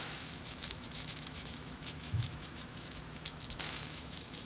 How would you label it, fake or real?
fake